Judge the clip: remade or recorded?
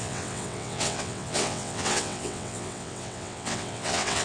remade